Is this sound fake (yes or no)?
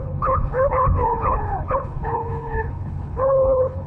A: yes